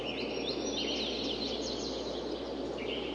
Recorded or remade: recorded